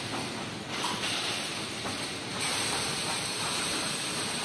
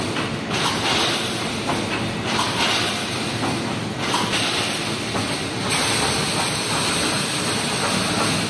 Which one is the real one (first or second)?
second